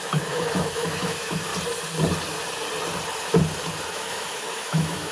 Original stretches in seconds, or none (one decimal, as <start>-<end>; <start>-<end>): 1.5-3.9